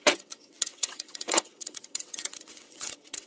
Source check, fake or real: fake